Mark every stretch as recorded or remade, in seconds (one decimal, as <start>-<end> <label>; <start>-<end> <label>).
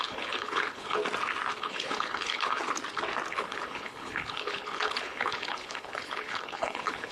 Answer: 0.0-1.0 remade; 1.0-1.6 recorded; 1.6-2.6 remade; 2.6-3.3 recorded; 3.3-7.1 remade